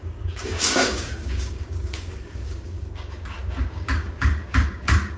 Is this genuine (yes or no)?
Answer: no